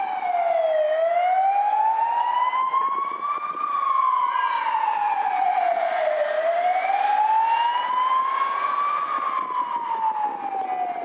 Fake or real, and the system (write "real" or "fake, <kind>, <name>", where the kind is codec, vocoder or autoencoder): real